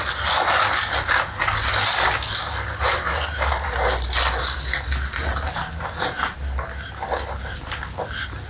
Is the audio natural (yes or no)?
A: yes